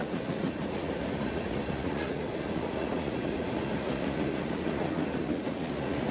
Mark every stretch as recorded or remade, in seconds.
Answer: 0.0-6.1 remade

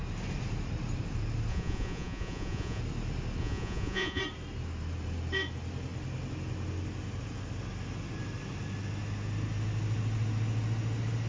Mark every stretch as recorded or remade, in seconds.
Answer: 0.0-1.5 recorded; 1.5-2.8 remade; 2.8-3.4 recorded; 3.4-4.2 remade; 4.2-11.3 recorded

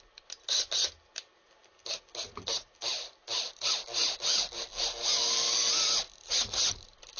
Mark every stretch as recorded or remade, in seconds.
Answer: 0.0-7.2 recorded

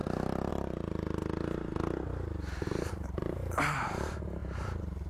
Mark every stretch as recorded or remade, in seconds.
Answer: 0.0-0.5 recorded; 0.5-1.2 remade; 1.2-2.9 recorded; 2.9-5.1 remade

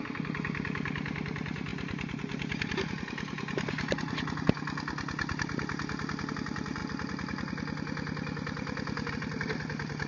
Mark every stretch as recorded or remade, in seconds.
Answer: 0.0-10.1 recorded

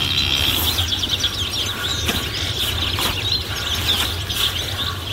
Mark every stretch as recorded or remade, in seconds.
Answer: 0.0-5.1 recorded

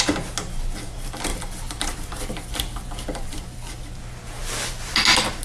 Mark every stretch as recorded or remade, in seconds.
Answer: 0.0-1.3 recorded; 1.3-4.0 remade; 4.0-5.4 recorded